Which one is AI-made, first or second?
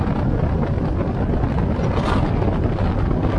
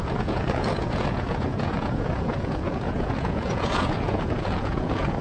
second